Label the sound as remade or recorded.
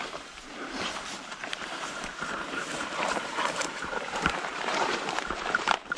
remade